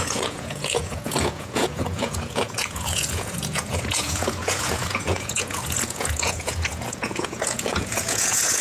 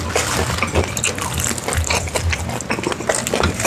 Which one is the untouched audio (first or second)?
second